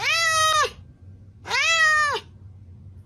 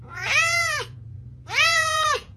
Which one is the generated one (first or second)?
second